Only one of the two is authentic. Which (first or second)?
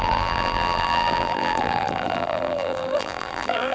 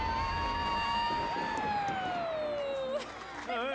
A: second